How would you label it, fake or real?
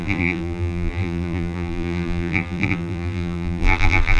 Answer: fake